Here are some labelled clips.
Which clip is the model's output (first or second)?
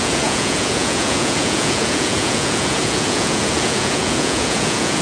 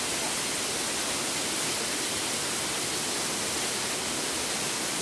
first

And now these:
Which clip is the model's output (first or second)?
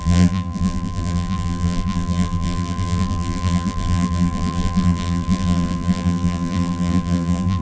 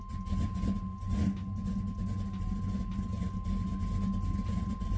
first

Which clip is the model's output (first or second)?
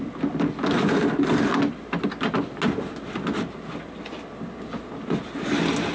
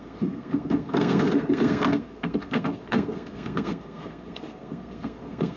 second